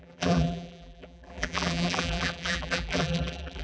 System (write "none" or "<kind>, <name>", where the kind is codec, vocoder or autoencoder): vocoder, BigVGAN v2